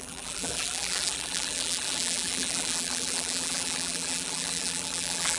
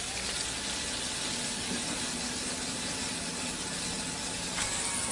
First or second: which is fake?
first